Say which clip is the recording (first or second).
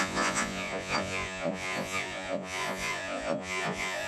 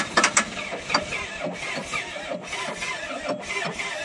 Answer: second